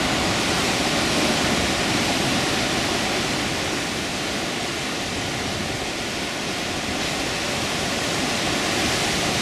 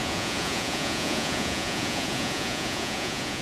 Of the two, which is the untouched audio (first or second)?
first